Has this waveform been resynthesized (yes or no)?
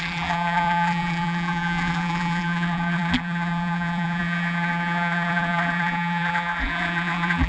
yes